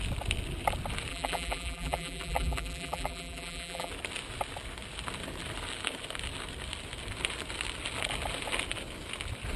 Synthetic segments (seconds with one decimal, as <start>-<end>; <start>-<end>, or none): 1.1-3.9